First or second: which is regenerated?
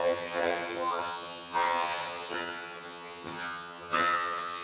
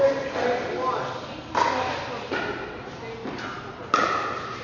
first